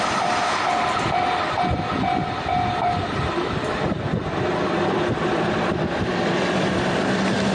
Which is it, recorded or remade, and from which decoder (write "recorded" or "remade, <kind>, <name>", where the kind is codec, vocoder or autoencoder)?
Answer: remade, vocoder, BigVGAN v2